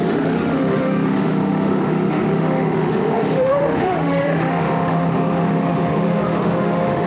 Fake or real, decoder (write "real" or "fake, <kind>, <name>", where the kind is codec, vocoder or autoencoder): fake, autoencoder, DAC-VAE